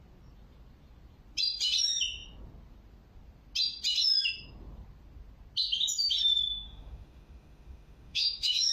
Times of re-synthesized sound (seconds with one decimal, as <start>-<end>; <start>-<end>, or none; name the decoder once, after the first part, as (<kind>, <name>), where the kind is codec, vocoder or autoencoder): 6.5-8.7 (autoencoder, DAC-VAE)